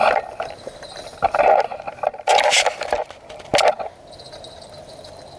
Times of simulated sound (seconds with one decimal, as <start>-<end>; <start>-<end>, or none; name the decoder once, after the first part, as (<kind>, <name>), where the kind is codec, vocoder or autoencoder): none